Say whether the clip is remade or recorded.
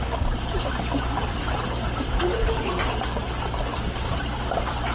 remade